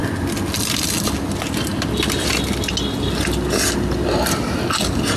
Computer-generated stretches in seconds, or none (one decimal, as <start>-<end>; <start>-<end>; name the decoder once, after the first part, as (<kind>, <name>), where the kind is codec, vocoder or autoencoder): none